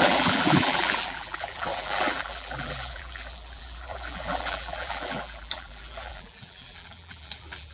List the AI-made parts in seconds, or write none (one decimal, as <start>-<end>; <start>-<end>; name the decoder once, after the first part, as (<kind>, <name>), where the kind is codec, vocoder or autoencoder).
0.0-7.7 (vocoder, BigVGAN v2)